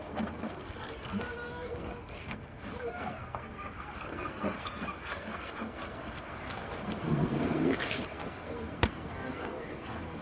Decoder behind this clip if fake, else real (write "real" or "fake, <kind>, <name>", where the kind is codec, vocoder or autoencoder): fake, codec, SNAC